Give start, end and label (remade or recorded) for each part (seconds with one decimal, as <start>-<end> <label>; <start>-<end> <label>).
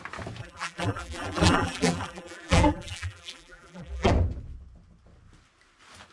0.0-0.4 recorded; 0.4-4.1 remade; 4.1-6.1 recorded